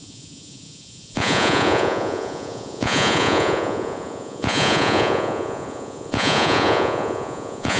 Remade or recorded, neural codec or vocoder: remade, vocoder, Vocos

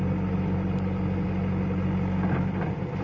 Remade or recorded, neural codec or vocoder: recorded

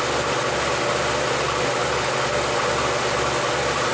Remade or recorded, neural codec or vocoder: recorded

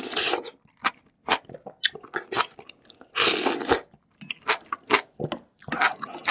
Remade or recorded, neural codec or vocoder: recorded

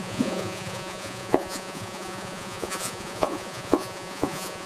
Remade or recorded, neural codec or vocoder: remade, vocoder, Vocos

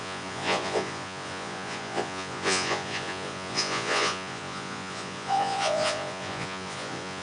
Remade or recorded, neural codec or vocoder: remade, vocoder, Vocos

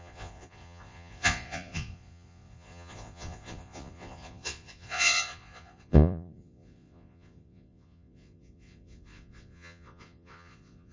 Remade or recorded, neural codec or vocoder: remade, vocoder, Vocos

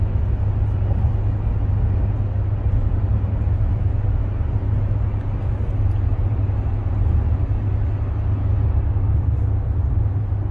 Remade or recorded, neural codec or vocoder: recorded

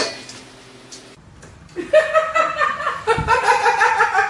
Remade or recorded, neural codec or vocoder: recorded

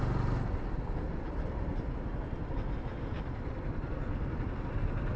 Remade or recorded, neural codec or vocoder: recorded